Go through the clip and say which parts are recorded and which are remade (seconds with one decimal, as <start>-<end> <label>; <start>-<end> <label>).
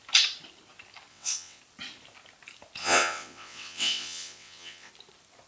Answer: 0.0-1.1 recorded; 1.1-1.6 remade; 1.6-2.8 recorded; 2.8-4.9 remade; 4.9-5.5 recorded